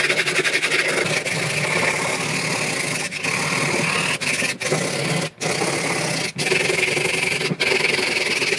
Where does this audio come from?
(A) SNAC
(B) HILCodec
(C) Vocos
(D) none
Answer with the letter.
D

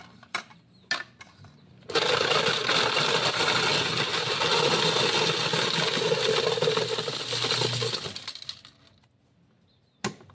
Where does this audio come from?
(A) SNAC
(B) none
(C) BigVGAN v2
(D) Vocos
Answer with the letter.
B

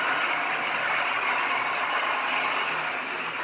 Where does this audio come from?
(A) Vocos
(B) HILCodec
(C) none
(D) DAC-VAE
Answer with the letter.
C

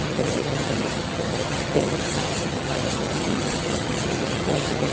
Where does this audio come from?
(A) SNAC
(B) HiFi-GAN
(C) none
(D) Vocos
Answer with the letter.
B